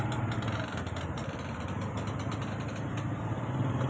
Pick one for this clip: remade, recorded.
recorded